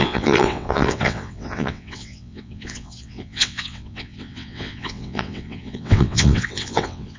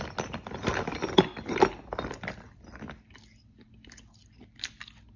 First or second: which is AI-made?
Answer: first